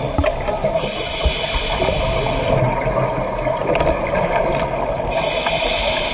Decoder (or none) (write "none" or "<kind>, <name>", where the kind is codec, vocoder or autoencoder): none